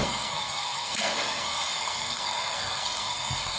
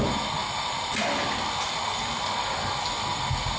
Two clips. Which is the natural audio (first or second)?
second